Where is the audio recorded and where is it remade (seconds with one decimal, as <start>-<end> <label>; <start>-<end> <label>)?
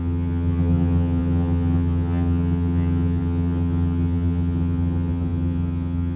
0.0-6.2 remade